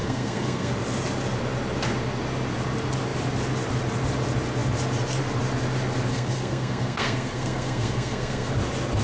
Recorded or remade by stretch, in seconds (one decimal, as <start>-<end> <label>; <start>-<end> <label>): 0.0-0.7 remade; 0.7-6.1 recorded; 6.1-8.5 remade; 8.5-9.0 recorded